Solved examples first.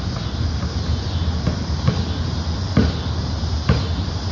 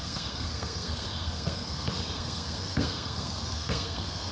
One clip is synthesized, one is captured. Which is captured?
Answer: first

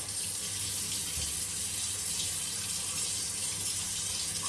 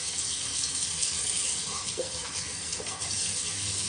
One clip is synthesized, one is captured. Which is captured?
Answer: first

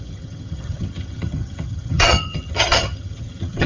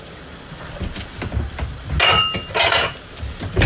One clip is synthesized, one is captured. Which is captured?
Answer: second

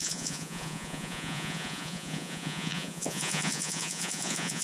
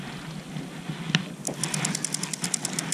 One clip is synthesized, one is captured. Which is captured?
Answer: second